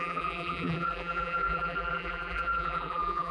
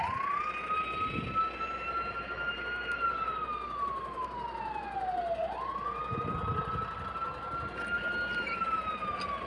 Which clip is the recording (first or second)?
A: second